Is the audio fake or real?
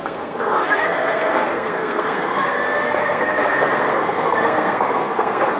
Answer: fake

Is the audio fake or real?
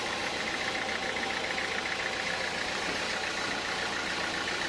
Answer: real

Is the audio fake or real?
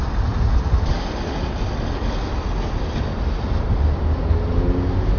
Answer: real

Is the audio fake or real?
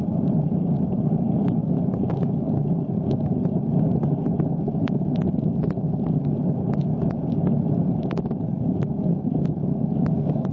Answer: real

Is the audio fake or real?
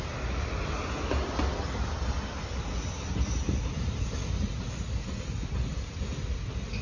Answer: real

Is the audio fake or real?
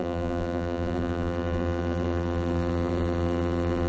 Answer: fake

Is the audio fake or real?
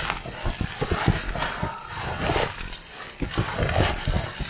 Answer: real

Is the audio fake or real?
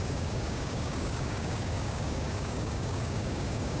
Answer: fake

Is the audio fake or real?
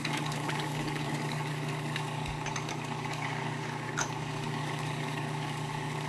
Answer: fake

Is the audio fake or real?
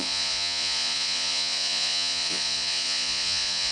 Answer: fake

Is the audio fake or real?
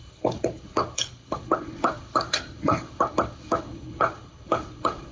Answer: fake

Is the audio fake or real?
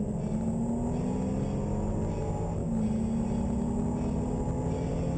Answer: real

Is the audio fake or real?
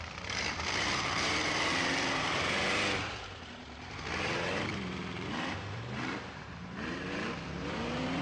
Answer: fake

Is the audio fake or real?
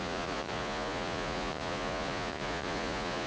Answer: fake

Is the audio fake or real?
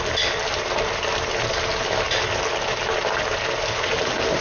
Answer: real